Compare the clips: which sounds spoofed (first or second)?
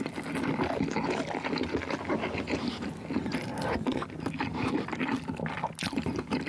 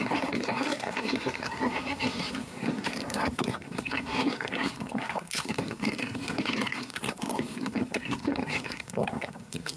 second